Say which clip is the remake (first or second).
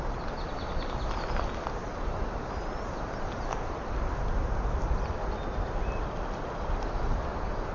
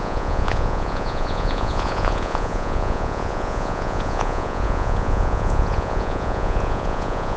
second